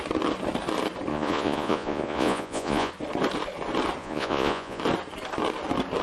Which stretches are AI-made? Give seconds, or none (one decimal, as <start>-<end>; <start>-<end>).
1.1-2.9; 4.0-4.8